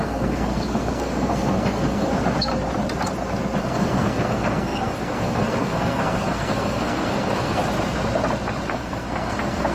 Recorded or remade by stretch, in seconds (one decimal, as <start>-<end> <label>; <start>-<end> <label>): 0.0-2.5 remade; 2.5-3.6 recorded; 3.6-7.6 remade; 7.6-8.7 recorded; 8.7-9.7 remade